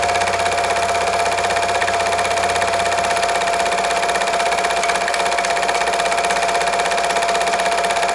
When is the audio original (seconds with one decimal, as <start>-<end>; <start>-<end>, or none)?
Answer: 0.0-8.1